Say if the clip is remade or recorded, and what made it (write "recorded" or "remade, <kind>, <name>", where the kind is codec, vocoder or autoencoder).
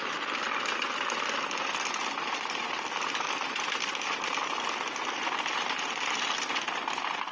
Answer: recorded